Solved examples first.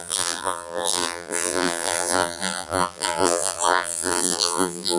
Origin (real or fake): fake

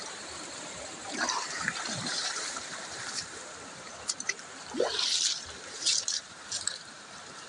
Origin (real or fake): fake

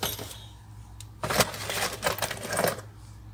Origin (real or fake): real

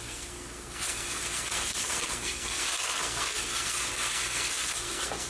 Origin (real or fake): fake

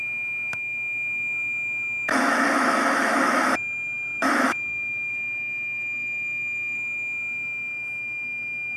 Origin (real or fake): fake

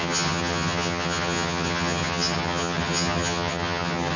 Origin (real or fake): fake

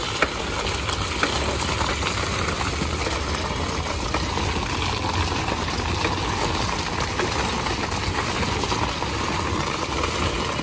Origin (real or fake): real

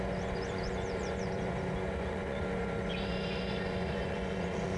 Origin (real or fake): fake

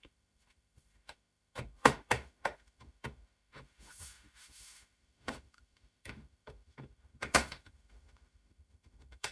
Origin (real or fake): fake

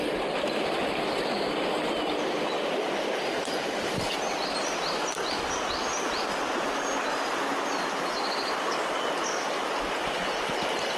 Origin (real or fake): real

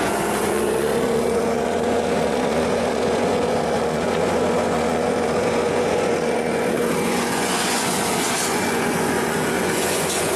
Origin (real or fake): fake